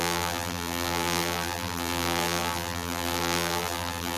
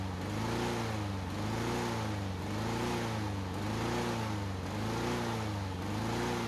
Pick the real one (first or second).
second